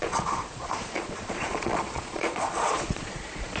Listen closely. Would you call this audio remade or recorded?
remade